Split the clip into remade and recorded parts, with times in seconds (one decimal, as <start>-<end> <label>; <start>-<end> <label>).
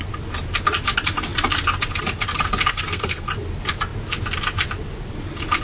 0.0-2.7 recorded; 2.7-3.3 remade; 3.3-5.6 recorded